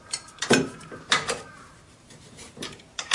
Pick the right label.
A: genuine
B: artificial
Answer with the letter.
B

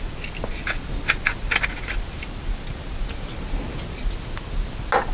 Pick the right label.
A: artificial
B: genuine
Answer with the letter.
B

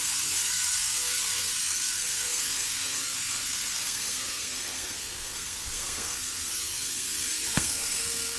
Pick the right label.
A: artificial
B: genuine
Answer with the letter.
A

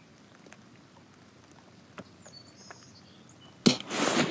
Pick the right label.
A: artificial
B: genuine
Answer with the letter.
B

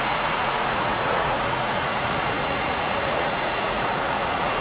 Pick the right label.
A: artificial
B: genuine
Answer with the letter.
A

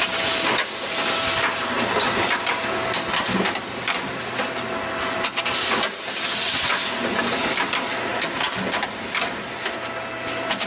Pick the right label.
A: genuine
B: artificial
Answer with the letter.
A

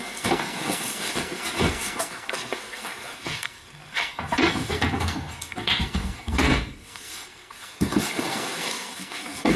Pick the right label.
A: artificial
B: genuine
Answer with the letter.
A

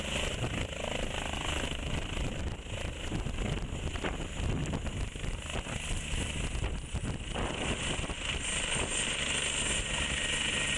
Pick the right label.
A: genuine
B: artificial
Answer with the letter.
A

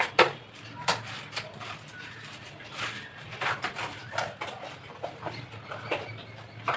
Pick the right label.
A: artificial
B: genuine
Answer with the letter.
A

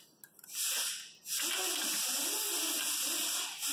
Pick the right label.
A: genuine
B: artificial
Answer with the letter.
A